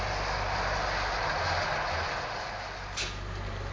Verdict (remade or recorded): recorded